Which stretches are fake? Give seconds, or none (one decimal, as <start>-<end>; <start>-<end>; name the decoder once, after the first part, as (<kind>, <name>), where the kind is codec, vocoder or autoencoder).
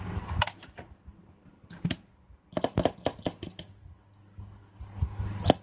none